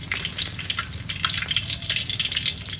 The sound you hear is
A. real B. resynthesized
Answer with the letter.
A